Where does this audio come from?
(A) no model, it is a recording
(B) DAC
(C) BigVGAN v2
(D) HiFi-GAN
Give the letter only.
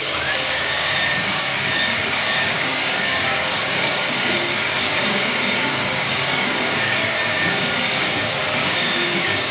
B